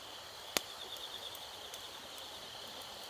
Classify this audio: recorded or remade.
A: recorded